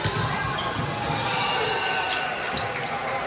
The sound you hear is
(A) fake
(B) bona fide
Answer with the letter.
B